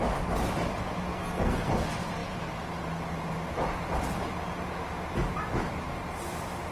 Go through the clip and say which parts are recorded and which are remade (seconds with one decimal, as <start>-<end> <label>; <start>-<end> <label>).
0.0-1.1 recorded; 1.1-1.7 remade; 1.7-6.7 recorded